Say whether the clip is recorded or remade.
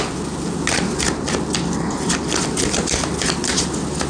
recorded